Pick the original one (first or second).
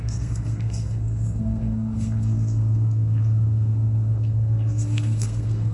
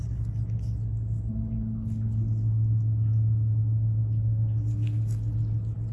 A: second